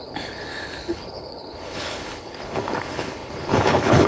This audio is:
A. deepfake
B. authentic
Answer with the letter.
A